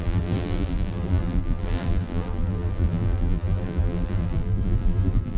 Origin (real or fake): fake